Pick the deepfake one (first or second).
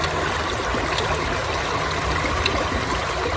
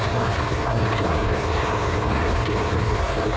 second